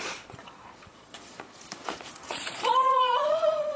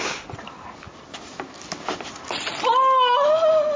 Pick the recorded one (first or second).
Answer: second